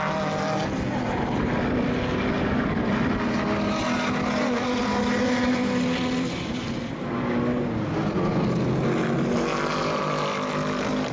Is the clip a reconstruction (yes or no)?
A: no